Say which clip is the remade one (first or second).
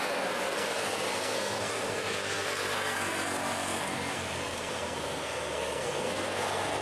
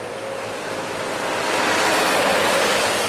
first